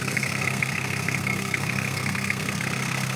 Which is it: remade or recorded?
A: remade